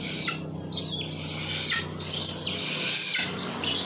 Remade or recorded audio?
recorded